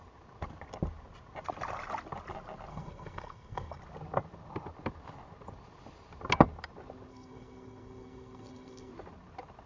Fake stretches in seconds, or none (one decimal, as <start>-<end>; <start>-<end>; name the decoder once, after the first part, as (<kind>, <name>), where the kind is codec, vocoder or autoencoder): 2.7-3.8 (codec, SNAC); 7.1-8.9